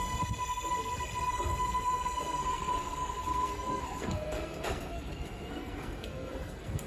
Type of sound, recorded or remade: remade